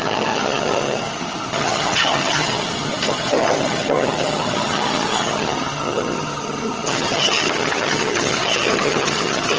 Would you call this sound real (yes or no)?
no